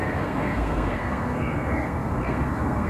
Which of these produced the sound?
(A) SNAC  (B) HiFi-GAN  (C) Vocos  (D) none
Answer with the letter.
A